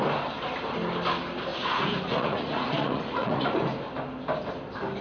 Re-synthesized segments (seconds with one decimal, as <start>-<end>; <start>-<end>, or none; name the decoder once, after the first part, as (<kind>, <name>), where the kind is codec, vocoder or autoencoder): 1.5-3.5 (vocoder, Vocos)